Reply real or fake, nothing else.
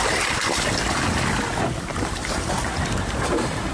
real